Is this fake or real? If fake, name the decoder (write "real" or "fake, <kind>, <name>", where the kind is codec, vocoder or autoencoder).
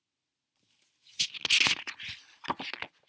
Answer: real